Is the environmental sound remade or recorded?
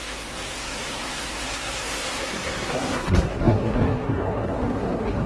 remade